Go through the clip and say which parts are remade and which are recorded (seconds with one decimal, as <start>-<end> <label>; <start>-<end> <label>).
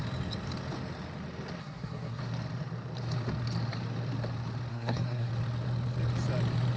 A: 0.0-1.6 recorded; 1.6-2.2 remade; 2.2-4.7 recorded; 4.7-5.3 remade; 5.3-6.8 recorded